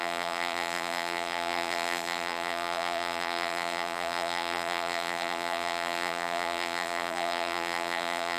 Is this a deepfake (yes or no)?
yes